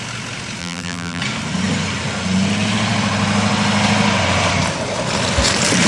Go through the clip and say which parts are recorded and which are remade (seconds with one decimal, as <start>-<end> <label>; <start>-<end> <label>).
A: 0.0-0.6 recorded; 0.6-1.2 remade; 1.2-5.9 recorded